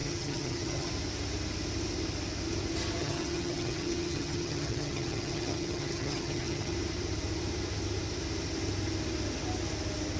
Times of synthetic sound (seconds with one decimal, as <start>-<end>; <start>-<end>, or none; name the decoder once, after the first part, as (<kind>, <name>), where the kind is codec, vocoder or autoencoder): 0.0-0.9 (vocoder, HiFi-GAN); 3.0-6.7